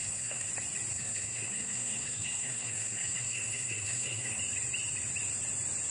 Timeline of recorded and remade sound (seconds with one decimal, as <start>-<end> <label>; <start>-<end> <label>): 0.0-0.5 remade; 0.5-0.9 recorded; 0.9-4.4 remade; 4.4-5.9 recorded